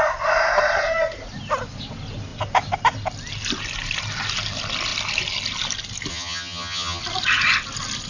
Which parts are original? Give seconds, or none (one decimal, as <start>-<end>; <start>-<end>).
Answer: 0.0-6.1; 7.0-8.1